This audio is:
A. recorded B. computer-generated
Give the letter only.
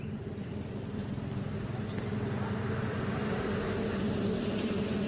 A